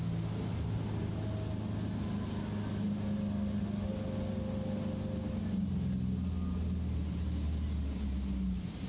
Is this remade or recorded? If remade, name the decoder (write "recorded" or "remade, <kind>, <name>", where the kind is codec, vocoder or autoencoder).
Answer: recorded